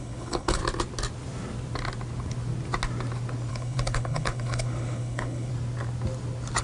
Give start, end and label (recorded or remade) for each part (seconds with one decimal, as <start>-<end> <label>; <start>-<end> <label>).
0.0-0.6 remade; 0.6-3.5 recorded; 3.5-5.5 remade; 5.5-6.6 recorded